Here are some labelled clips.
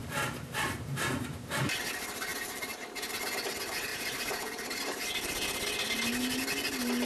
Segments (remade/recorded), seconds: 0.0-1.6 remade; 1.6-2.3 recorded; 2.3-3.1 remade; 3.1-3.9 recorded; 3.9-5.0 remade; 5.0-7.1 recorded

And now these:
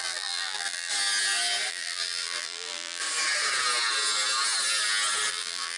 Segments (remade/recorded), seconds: 0.0-0.9 remade; 0.9-1.7 recorded; 1.7-3.0 remade; 3.0-5.3 recorded; 5.3-5.8 remade

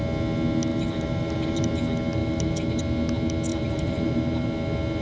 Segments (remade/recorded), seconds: 0.0-0.7 recorded; 0.7-1.7 remade; 1.7-2.2 recorded; 2.2-2.8 remade; 2.8-3.5 recorded; 3.5-4.5 remade; 4.5-5.0 recorded

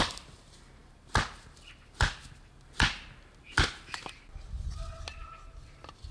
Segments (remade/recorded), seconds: 0.0-6.1 recorded

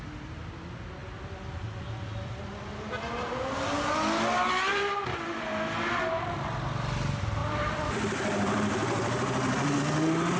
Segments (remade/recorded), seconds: 0.0-1.0 recorded; 1.0-2.4 remade; 2.4-7.4 recorded; 7.4-9.8 remade; 9.8-10.4 recorded